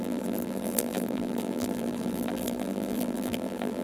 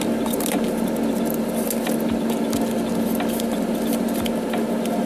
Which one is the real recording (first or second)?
second